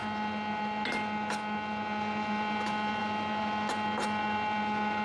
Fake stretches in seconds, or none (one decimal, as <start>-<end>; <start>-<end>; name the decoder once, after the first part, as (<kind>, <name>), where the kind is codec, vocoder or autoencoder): none